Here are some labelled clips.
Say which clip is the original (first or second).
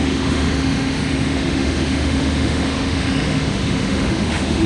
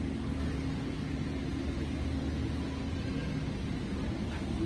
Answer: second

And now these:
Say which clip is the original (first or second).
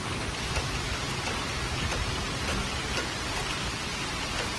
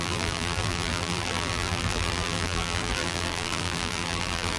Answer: first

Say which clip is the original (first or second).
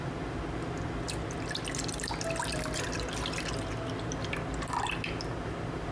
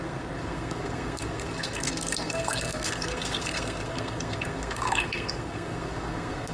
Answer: first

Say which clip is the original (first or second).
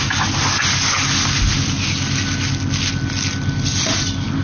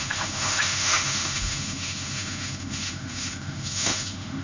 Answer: first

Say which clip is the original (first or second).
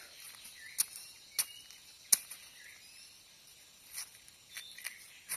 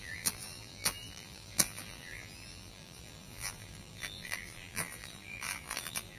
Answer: first